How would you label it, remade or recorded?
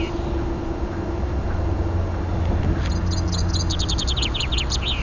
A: recorded